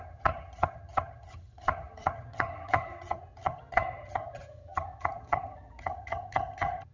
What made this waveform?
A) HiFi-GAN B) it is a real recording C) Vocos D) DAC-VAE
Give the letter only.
A